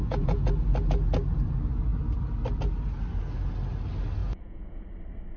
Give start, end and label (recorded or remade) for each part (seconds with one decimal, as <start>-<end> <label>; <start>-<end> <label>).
0.0-0.5 remade; 0.5-4.2 recorded; 4.2-4.8 remade; 4.8-5.4 recorded